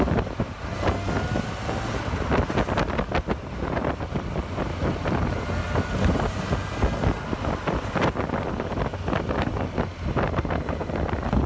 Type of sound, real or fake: real